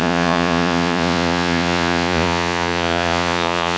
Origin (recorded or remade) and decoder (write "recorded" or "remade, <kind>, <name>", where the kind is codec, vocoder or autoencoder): remade, vocoder, Vocos